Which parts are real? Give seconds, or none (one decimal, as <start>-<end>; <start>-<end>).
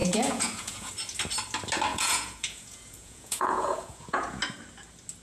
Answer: 0.9-1.9; 4.4-5.2